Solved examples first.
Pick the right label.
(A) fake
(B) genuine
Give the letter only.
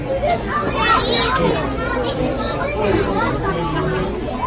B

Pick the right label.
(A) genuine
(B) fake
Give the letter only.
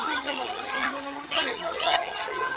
B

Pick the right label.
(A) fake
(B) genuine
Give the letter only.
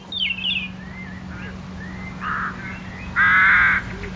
B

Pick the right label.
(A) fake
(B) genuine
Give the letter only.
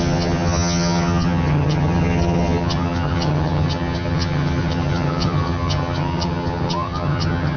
A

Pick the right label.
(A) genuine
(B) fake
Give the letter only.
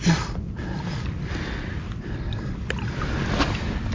A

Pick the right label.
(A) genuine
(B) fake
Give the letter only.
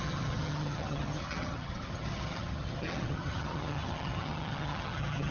B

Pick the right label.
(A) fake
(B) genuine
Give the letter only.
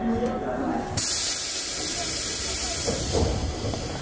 B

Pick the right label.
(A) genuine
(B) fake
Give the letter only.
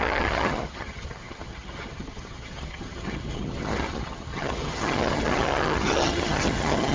B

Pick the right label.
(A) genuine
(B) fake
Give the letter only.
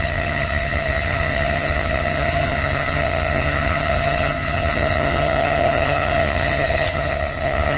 B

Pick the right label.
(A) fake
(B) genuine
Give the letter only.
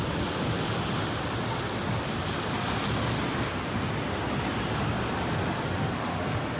B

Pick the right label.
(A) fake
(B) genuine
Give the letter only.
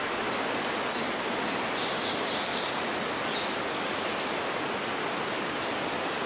B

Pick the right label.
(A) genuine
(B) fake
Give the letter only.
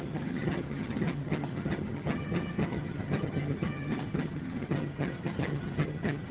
B